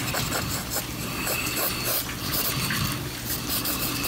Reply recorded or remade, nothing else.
recorded